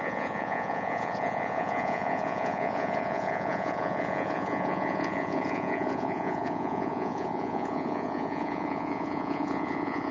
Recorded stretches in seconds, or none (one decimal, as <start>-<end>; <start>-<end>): none